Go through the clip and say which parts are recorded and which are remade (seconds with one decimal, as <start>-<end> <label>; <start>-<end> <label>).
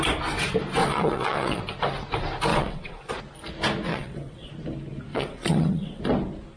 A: 0.0-0.8 recorded; 0.8-1.6 remade; 1.6-2.5 recorded; 2.5-3.1 remade; 3.1-3.9 recorded; 3.9-4.5 remade; 4.5-5.1 recorded; 5.1-6.0 remade; 6.0-6.6 recorded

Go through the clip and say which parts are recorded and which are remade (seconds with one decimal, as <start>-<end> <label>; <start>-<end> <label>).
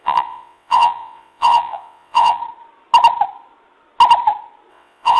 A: 0.0-2.4 remade; 2.4-4.7 recorded; 4.7-5.2 remade